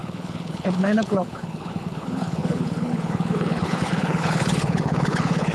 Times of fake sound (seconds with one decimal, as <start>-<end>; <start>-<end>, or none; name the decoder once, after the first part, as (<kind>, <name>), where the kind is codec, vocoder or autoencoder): 0.0-5.5 (codec, HILCodec)